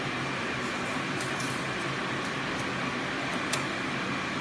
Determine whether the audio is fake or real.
real